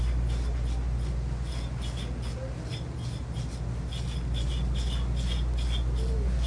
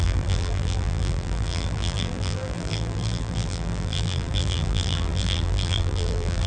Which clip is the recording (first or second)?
first